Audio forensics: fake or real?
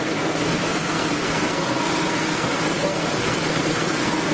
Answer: fake